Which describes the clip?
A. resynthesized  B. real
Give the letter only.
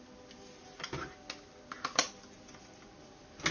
B